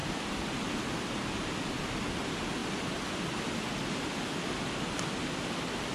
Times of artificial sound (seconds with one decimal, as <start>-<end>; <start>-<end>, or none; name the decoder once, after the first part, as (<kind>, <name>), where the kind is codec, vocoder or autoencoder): none